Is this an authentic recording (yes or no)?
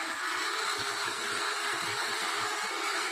no